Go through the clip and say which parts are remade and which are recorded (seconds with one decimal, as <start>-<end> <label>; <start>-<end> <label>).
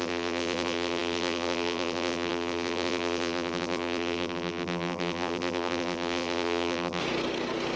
0.0-7.0 remade; 7.0-7.8 recorded